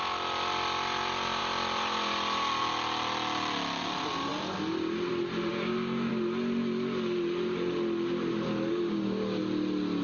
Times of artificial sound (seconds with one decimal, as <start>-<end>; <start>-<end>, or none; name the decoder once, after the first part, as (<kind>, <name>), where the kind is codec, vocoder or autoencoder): 5.5-6.1 (codec, DAC); 8.7-9.4